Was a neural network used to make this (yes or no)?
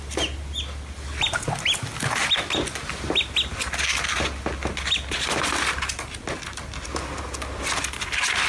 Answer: no